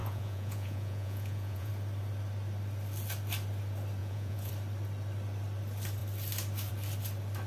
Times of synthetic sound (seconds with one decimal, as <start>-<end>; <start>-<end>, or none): 0.0-1.7; 4.0-4.5